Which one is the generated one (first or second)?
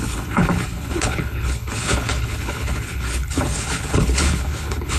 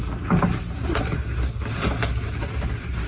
first